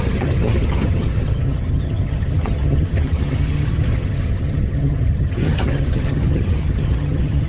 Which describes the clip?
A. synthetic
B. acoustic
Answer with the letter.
A